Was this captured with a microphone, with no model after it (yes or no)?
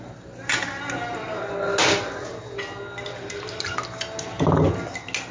yes